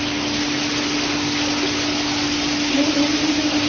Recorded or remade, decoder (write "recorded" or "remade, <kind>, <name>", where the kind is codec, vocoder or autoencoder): recorded